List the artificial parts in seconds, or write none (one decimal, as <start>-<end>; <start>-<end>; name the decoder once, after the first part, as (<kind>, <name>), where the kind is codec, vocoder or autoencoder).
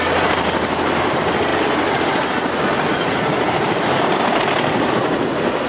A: none